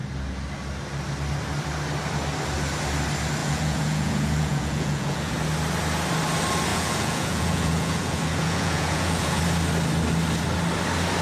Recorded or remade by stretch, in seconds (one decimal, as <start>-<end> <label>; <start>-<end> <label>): 0.0-3.4 recorded; 3.4-5.3 remade; 5.3-6.7 recorded; 6.7-9.4 remade; 9.4-11.2 recorded